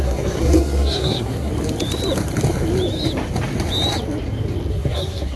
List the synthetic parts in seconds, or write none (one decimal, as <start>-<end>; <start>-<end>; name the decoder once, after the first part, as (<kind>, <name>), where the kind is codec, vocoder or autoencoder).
0.0-1.5 (codec, SNAC); 4.7-5.4